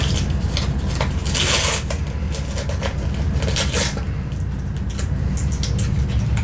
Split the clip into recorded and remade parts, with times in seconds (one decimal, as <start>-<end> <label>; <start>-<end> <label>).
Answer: 0.0-6.4 recorded

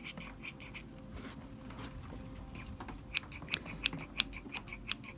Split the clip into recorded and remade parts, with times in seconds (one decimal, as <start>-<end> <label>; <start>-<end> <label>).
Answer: 0.0-5.2 recorded

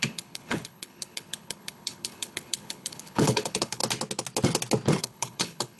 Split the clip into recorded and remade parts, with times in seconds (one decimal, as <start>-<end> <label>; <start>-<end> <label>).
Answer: 0.0-3.8 remade; 3.8-5.0 recorded; 5.0-5.8 remade

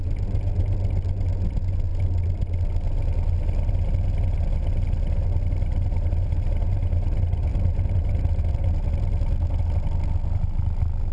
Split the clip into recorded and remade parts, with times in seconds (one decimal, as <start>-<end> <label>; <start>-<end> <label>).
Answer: 0.0-11.1 recorded